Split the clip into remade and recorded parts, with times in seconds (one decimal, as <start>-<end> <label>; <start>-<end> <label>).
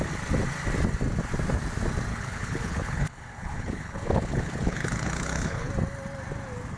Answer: 0.0-2.1 recorded; 2.1-5.7 remade; 5.7-6.8 recorded